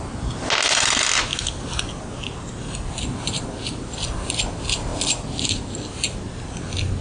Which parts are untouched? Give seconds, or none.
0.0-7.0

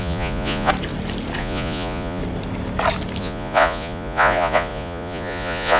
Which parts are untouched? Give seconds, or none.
0.7-1.4; 2.2-3.2

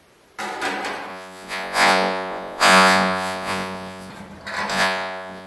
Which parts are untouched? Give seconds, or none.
0.0-1.1; 4.1-4.7

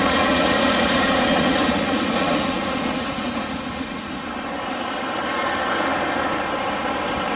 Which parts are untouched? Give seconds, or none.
4.1-7.4

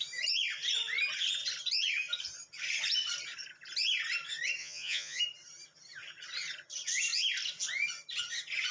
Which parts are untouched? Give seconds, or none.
0.0-4.6; 5.2-8.7

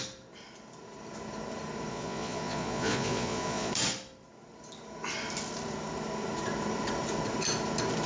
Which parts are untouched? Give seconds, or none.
0.0-1.9; 3.7-8.1

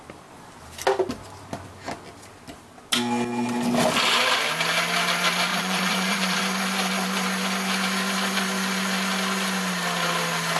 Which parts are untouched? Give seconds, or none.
0.0-5.5; 6.4-10.6

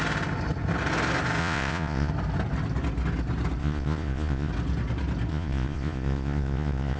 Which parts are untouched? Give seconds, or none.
0.0-1.4; 2.1-3.6; 4.5-5.3